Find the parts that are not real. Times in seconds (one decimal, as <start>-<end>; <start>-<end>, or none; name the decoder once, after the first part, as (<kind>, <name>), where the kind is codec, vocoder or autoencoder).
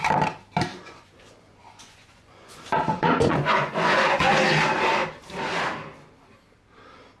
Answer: 0.7-4.3 (vocoder, Vocos)